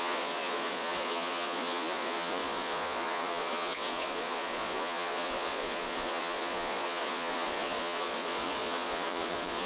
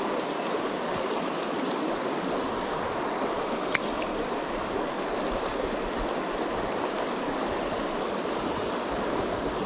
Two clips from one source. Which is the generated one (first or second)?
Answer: first